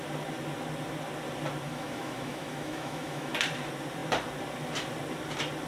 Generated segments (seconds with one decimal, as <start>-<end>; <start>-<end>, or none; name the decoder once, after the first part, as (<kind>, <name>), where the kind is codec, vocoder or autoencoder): 1.7-3.3 (autoencoder, DAC-VAE)